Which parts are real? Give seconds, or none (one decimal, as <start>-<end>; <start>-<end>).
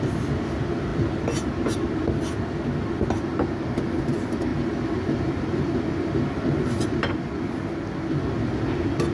0.0-9.1